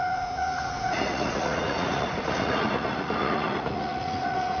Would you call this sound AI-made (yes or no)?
yes